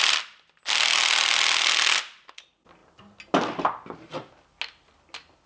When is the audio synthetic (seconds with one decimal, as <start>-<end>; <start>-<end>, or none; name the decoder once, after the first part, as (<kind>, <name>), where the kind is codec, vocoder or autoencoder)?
none